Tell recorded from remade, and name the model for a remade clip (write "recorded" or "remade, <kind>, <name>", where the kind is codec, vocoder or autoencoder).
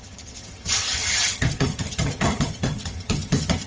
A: remade, vocoder, HiFi-GAN